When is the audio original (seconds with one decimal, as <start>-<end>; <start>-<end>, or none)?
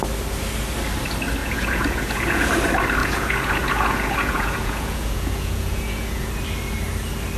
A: 0.0-1.4; 2.5-3.0; 6.3-7.4